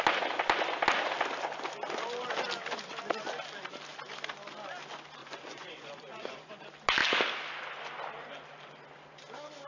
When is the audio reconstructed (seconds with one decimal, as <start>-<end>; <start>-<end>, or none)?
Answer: 5.2-6.6